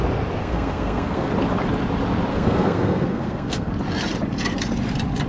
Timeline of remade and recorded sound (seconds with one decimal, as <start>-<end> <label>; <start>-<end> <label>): 0.0-0.4 recorded; 0.4-1.3 remade; 1.3-2.3 recorded; 2.3-3.7 remade; 3.7-5.3 recorded